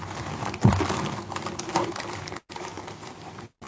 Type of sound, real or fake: real